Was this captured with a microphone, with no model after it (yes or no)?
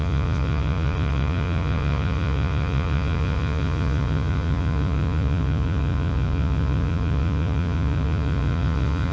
no